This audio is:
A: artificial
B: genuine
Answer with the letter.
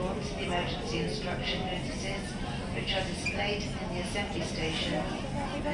B